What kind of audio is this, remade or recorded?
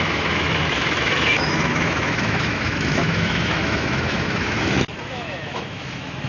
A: remade